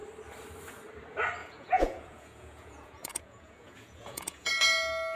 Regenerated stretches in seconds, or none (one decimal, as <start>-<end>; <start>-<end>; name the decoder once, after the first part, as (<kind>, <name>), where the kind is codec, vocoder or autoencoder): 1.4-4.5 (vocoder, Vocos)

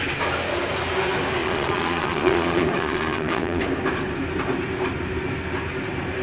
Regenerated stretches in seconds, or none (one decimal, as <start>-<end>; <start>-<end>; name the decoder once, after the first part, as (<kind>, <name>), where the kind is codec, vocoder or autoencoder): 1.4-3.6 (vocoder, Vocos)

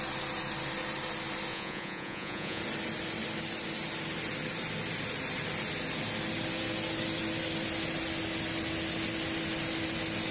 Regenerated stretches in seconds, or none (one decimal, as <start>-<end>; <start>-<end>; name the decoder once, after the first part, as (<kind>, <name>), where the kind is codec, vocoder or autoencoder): 1.5-2.6 (vocoder, Vocos)